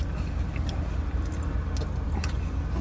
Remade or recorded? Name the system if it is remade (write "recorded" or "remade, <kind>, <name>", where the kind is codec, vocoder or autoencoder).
recorded